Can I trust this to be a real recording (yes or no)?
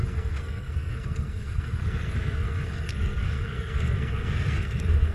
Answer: no